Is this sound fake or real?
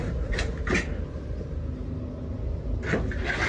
fake